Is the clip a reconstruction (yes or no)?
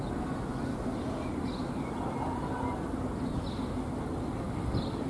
no